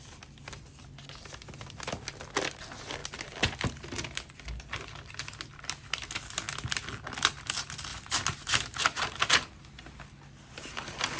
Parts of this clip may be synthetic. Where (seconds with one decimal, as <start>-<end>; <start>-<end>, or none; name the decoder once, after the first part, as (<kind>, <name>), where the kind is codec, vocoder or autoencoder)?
7.9-9.2 (vocoder, BigVGAN v2)